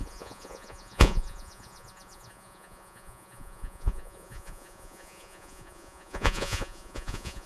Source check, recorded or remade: remade